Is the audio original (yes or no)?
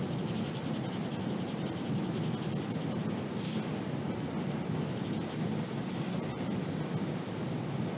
yes